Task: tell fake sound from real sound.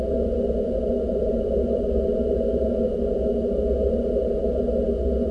real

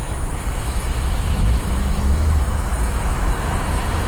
fake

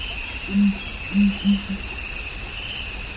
real